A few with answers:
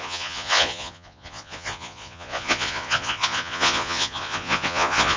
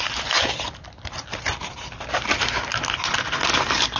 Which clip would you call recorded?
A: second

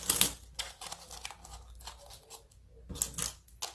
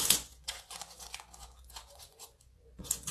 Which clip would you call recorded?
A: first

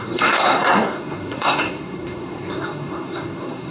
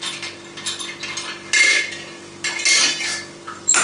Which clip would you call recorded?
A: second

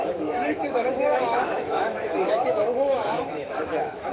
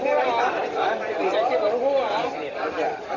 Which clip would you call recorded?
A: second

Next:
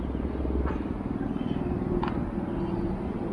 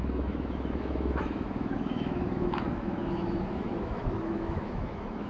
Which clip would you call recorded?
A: first